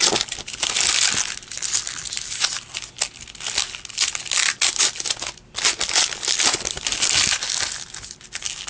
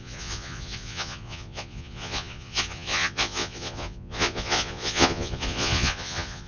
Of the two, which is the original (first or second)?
first